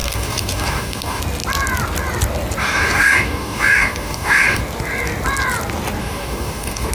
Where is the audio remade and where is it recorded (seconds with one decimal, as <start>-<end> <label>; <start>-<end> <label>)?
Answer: 0.0-1.2 remade; 1.2-2.6 recorded; 2.6-4.6 remade; 4.6-6.0 recorded; 6.0-6.9 remade